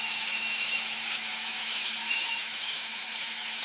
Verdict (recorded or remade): remade